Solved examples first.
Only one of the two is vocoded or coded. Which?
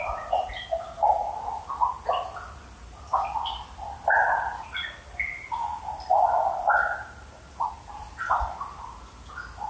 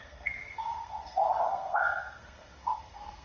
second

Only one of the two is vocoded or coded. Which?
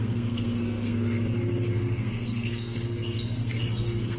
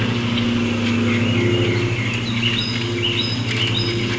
first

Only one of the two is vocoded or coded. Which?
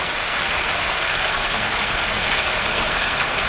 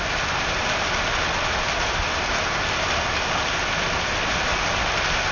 first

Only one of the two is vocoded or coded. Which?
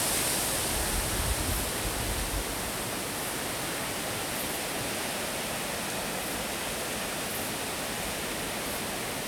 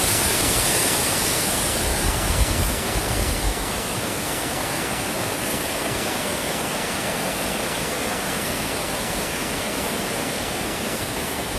second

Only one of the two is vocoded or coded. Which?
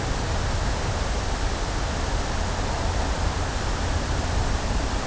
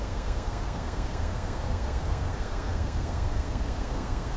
second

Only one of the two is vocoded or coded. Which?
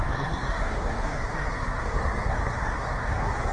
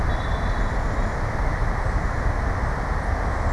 first